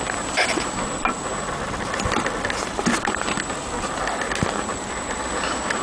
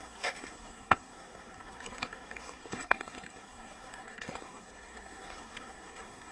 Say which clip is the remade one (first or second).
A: second